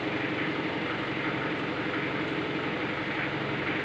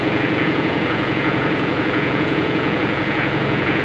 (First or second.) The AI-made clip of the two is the second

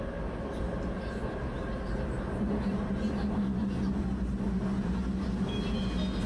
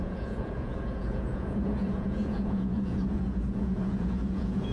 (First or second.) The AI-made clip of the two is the second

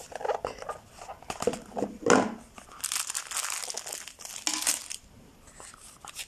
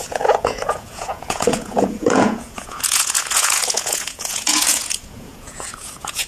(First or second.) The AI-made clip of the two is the second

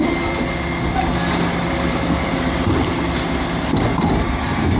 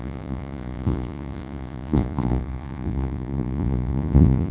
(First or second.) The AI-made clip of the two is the second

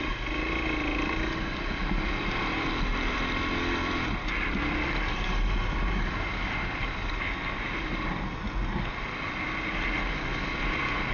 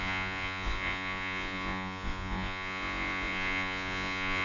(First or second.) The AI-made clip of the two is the second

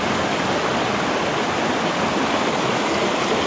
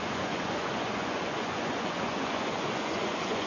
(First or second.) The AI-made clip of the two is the second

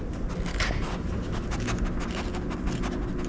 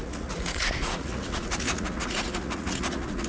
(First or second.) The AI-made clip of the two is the second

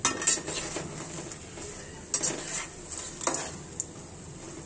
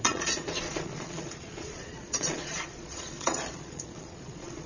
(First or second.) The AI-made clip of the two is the second